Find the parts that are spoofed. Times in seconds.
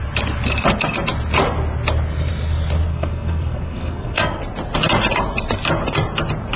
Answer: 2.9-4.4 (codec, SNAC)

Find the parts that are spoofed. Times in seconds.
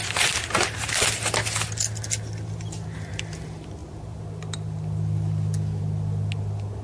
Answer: none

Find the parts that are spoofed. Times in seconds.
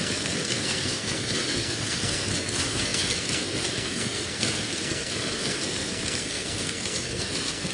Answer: 0.0-7.7 (codec, SNAC)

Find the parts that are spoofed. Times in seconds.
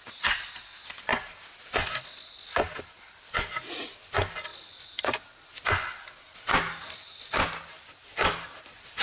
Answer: none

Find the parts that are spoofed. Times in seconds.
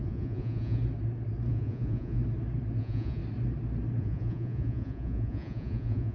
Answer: 0.0-0.8 (vocoder, Vocos); 1.5-2.2; 2.8-3.2; 4.0-6.1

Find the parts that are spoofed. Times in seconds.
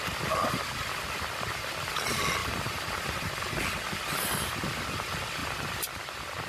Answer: 2.4-3.3 (vocoder, BigVGAN v2)